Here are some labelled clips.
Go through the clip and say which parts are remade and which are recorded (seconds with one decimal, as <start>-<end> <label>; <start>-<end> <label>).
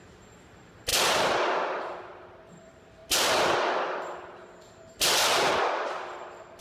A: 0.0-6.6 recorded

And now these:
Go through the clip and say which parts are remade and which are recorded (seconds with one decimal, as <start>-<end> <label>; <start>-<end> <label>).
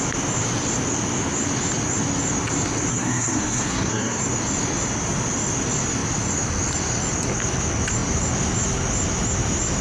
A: 0.0-2.9 recorded; 2.9-4.2 remade; 4.2-9.8 recorded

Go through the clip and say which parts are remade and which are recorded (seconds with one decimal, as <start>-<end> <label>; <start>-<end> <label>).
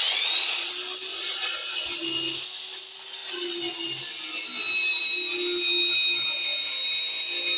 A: 0.0-0.7 remade; 0.7-1.1 recorded; 1.1-2.0 remade; 2.0-7.6 recorded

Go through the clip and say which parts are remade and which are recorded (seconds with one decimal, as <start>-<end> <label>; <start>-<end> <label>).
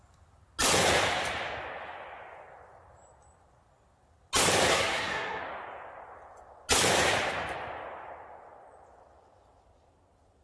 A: 0.0-4.7 recorded; 4.7-5.4 remade; 5.4-10.4 recorded